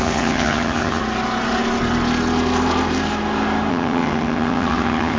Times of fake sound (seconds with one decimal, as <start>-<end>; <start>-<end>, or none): 0.0-1.0; 3.7-5.2